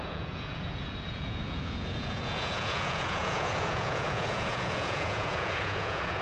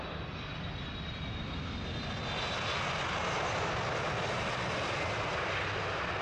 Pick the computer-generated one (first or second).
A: first